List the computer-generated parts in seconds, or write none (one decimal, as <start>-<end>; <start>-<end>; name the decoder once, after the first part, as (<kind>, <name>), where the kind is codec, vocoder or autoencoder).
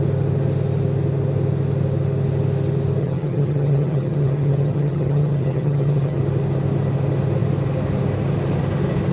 3.0-6.2 (vocoder, HiFi-GAN)